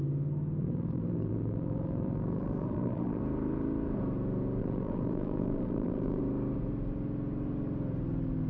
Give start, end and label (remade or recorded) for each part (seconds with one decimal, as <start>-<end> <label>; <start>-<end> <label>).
0.0-0.6 recorded; 0.6-3.2 remade; 3.2-4.6 recorded; 4.6-6.2 remade; 6.2-8.5 recorded